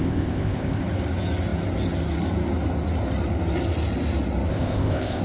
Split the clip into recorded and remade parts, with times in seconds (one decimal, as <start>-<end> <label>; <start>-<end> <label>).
0.0-0.8 remade; 0.8-4.5 recorded; 4.5-5.2 remade